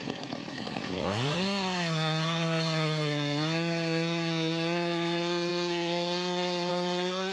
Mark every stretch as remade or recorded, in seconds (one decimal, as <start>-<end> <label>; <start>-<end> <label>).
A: 0.0-7.3 remade